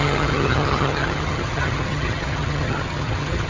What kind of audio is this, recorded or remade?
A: remade